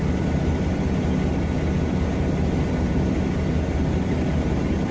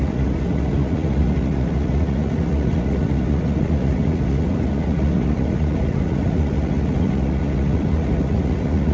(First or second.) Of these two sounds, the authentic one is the first